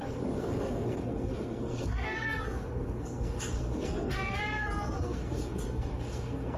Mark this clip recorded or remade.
remade